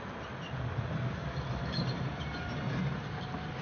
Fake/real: real